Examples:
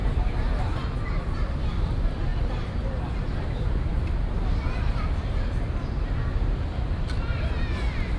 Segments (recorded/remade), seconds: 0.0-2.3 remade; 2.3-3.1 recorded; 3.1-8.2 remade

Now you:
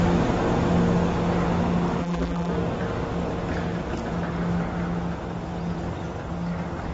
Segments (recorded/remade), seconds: 0.0-2.0 recorded; 2.0-2.5 remade; 2.5-6.9 recorded